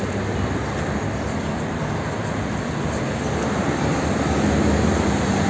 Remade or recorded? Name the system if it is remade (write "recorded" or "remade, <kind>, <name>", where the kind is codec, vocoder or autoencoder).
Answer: recorded